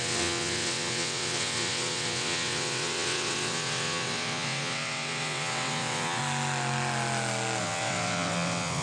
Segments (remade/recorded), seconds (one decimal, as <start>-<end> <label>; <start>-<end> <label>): 0.0-6.2 remade; 6.2-7.6 recorded; 7.6-8.8 remade